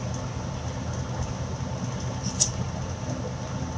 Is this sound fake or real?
real